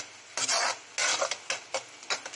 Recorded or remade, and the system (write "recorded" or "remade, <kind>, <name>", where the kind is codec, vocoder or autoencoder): recorded